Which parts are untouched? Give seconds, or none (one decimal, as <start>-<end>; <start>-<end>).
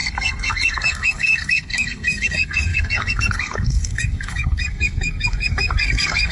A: none